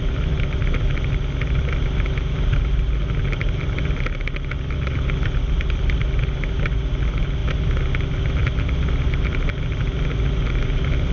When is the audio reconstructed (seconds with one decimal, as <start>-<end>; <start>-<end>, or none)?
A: none